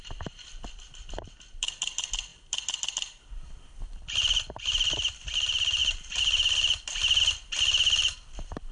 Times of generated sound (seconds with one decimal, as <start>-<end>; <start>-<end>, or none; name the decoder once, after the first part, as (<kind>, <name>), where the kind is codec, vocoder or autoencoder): 0.0-8.7 (vocoder, BigVGAN v2)